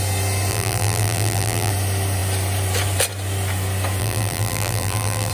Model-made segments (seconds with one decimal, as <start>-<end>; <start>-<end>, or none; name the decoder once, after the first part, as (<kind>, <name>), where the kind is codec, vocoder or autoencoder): 0.5-1.7 (vocoder, BigVGAN v2); 4.0-5.3